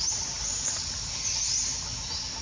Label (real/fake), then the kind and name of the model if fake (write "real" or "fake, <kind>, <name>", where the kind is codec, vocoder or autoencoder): real